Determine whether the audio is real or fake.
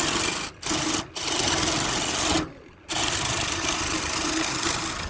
real